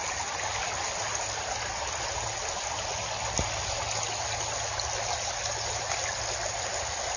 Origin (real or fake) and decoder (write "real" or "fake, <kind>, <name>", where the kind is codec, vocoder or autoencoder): real